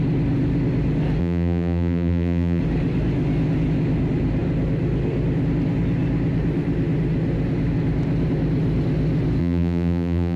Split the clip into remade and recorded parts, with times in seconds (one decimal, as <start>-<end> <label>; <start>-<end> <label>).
0.0-1.2 recorded; 1.2-2.6 remade; 2.6-9.4 recorded; 9.4-10.4 remade